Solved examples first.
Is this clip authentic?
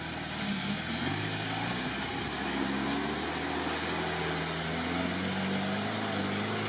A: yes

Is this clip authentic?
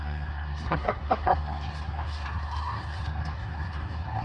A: no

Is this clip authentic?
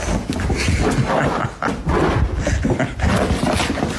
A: yes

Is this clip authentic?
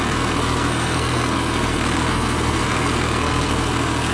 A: no